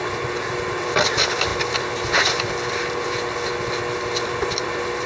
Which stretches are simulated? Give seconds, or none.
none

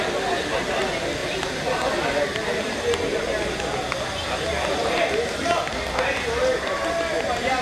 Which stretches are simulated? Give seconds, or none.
none

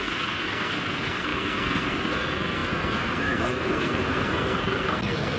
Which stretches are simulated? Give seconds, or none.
0.0-5.4 (codec, SNAC)

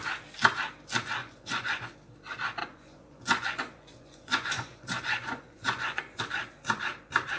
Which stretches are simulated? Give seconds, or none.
1.2-1.9 (vocoder, Vocos); 2.6-6.2

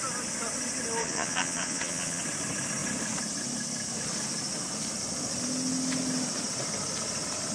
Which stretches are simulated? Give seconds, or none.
1.0-2.2 (vocoder, Vocos)

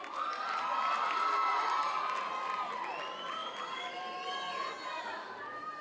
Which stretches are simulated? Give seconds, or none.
none

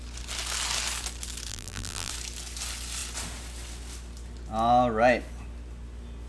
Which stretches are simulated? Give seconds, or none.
1.5-2.1 (vocoder, BigVGAN v2)